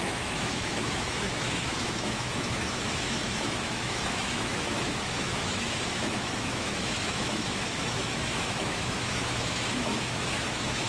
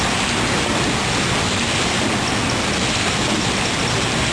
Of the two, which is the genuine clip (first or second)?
second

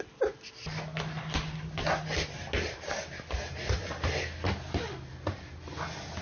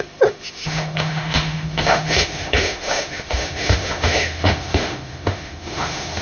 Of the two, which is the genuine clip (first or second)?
first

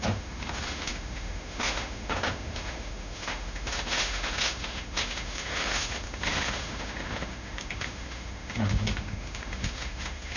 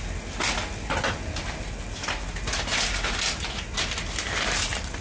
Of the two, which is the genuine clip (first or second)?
second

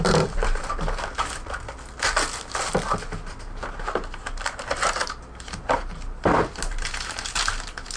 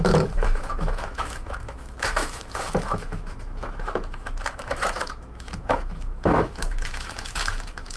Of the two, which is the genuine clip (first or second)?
first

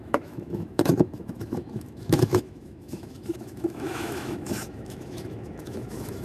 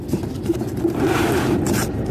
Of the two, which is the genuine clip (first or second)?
second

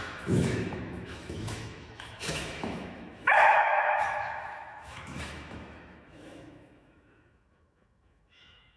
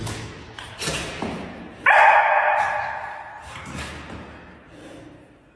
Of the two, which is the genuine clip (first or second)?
second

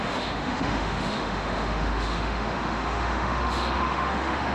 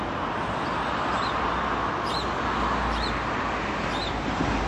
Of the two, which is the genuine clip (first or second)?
second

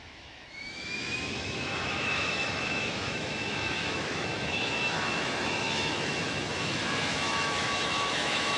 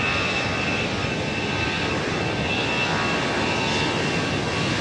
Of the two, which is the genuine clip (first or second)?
second